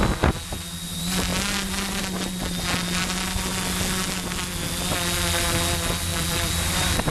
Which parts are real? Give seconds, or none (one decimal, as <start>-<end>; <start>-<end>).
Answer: 0.0-6.1

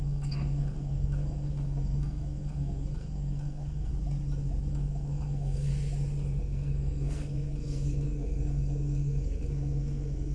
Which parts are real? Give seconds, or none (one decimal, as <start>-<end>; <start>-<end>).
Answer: 3.9-4.7; 5.7-6.4

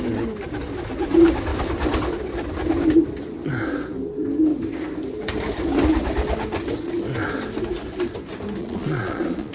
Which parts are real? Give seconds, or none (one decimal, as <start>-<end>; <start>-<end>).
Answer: 0.0-8.6

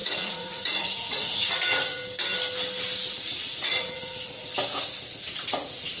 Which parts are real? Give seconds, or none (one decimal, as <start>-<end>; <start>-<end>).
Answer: 2.0-3.1; 4.5-5.1

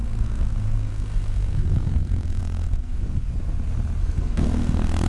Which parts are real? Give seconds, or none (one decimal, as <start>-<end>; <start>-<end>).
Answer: 3.3-4.0

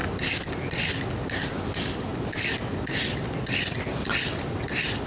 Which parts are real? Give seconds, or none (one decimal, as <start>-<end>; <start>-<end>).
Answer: 0.0-5.1